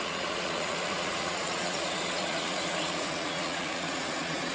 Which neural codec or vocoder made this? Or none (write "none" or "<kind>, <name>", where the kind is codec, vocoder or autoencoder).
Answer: vocoder, Vocos